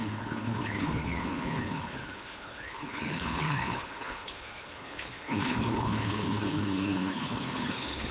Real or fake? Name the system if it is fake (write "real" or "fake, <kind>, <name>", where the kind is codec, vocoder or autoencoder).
fake, codec, HILCodec